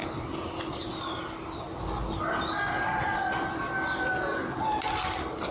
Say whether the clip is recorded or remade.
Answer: recorded